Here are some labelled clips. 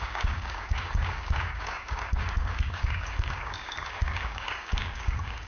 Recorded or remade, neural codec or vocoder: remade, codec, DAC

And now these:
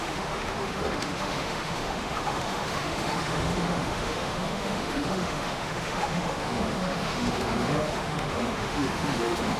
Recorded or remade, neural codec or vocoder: remade, autoencoder, DAC-VAE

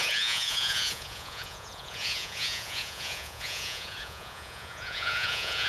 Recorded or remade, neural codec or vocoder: remade, vocoder, Vocos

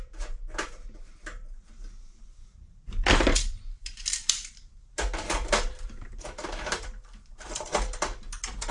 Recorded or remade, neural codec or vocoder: remade, vocoder, BigVGAN v2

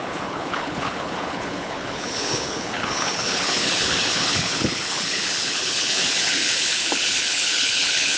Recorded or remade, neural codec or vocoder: remade, codec, HILCodec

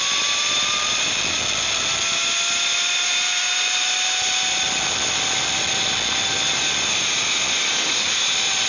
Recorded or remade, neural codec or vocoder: recorded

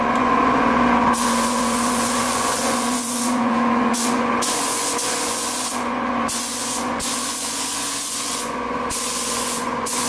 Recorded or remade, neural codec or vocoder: remade, vocoder, Vocos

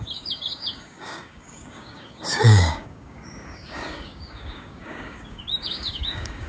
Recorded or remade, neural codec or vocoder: remade, codec, DAC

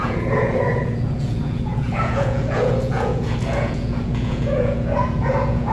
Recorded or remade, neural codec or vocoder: remade, vocoder, Vocos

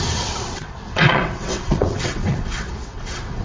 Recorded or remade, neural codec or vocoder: remade, vocoder, WaveNeXt